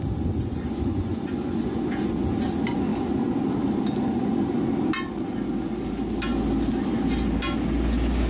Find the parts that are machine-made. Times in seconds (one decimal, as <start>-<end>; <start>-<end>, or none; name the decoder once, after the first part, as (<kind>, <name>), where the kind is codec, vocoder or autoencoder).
0.5-2.2 (vocoder, Vocos)